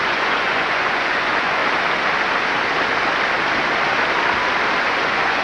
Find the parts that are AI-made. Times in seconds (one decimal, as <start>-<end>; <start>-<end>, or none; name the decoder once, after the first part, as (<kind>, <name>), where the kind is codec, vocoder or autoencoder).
0.0-1.6 (vocoder, Vocos); 4.8-5.4